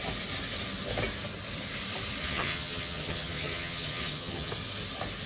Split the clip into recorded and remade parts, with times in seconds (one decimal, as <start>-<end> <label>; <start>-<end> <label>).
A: 0.0-2.2 recorded; 2.2-4.5 remade; 4.5-5.3 recorded